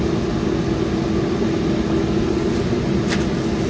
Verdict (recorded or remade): recorded